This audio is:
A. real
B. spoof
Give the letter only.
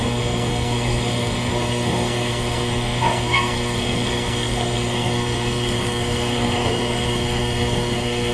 B